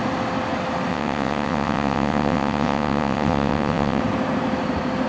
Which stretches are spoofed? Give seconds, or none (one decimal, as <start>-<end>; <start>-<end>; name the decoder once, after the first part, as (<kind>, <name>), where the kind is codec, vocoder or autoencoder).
0.9-4.0 (vocoder, WaveNeXt)